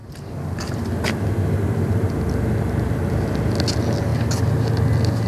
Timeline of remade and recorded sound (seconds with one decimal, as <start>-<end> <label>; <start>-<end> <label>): 0.0-5.3 recorded